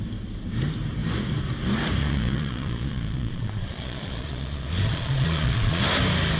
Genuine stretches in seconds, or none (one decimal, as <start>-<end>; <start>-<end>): 0.0-2.0; 5.8-6.4

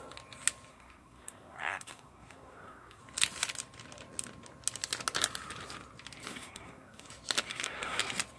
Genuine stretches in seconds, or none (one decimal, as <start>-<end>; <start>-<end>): 0.0-0.7; 3.0-6.3; 7.1-7.5; 8.0-8.4

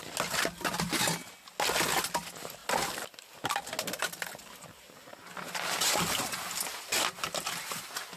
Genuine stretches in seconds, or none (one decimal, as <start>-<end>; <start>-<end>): 0.0-8.2

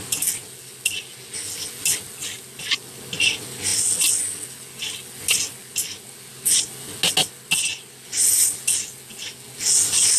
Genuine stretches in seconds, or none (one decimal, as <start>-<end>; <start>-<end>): 0.0-10.2

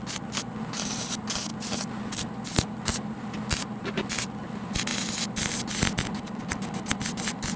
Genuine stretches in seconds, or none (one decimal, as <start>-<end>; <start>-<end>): 0.0-7.6

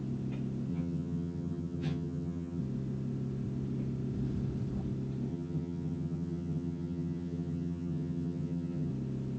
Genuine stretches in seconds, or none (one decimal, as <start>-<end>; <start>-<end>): 0.0-0.7; 2.6-5.3; 8.9-9.4

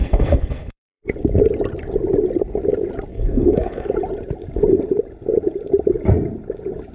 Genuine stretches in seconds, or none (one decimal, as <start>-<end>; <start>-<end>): 1.0-3.1; 3.9-6.9